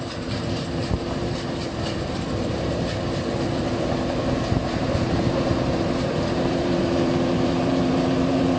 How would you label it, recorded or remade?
remade